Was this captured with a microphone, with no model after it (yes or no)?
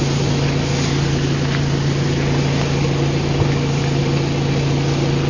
yes